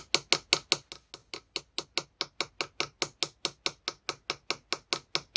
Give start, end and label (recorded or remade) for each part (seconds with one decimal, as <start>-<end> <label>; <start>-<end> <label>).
0.0-5.4 recorded